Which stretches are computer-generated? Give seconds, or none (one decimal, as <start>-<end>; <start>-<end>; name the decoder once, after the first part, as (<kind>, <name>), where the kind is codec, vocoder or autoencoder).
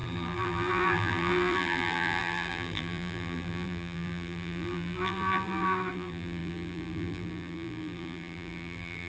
0.0-9.1 (vocoder, BigVGAN v2)